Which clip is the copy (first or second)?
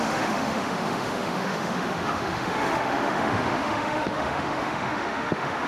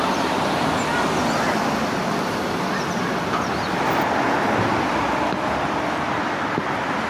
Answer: first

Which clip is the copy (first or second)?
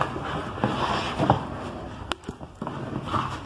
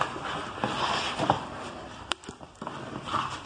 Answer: second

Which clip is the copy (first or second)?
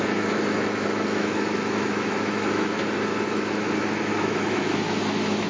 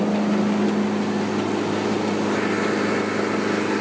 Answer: first